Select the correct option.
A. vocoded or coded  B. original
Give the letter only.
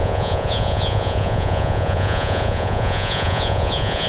A